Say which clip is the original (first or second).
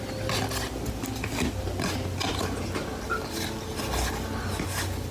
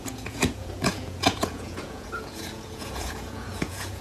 first